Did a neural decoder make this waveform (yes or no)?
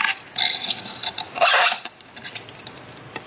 no